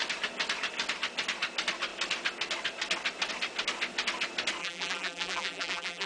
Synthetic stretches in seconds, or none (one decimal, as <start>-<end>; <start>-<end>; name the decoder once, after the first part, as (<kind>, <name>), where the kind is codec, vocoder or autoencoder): 4.6-6.1 (vocoder, BigVGAN v2)